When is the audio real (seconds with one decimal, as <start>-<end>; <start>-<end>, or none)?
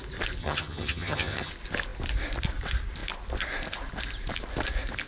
0.0-0.4; 1.5-5.1